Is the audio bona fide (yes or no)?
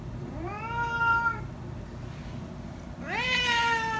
yes